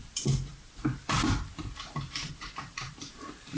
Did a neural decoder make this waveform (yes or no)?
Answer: yes